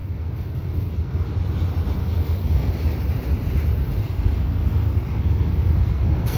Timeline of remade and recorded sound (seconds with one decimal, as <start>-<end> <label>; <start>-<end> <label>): 0.0-1.3 remade; 1.3-2.0 recorded; 2.0-2.7 remade; 2.7-4.0 recorded; 4.0-6.4 remade